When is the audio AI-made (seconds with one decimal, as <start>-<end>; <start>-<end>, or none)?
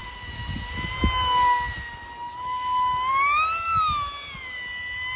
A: none